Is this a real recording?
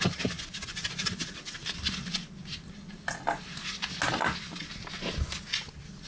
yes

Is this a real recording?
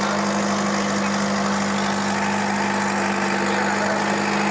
yes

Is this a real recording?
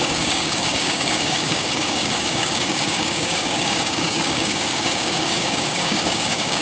no